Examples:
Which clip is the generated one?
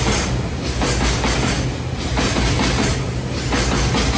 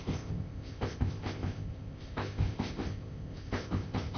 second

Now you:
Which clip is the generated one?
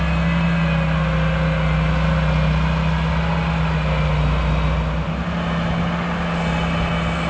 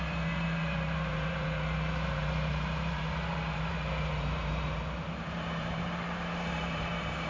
second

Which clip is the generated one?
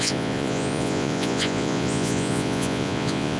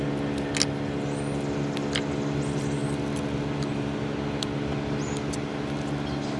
first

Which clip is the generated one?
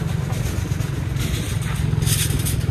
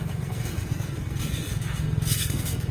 second